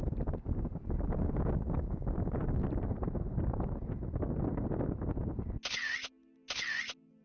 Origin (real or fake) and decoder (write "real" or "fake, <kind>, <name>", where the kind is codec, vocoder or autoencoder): real